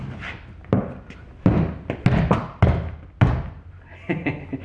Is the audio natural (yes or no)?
yes